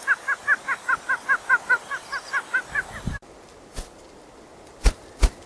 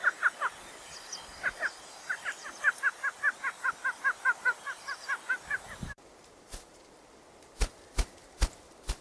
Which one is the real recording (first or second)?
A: first